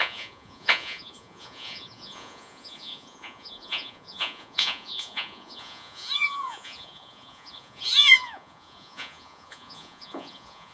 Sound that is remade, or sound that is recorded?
remade